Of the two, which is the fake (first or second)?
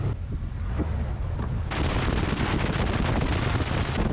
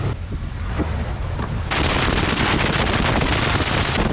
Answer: second